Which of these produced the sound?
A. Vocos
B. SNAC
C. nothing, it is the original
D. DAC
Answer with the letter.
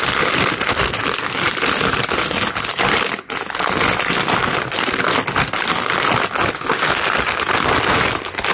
C